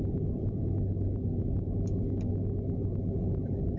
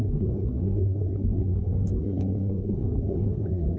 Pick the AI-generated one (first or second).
second